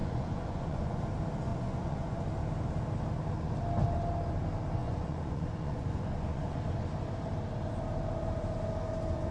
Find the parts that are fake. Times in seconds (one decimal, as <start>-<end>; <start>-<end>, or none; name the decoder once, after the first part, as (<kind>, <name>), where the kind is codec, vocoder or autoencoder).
0.0-1.0 (vocoder, Vocos); 1.5-2.2; 4.8-6.6

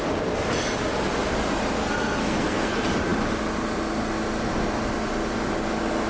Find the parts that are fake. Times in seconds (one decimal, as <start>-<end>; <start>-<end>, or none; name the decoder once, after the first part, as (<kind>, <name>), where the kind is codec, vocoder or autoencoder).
1.9-2.7 (codec, SNAC)

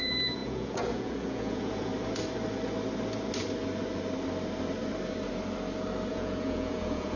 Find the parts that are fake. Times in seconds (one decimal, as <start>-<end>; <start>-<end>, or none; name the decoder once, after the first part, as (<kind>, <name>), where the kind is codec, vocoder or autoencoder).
0.0-1.9 (vocoder, Vocos); 6.1-7.2